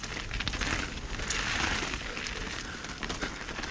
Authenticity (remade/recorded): recorded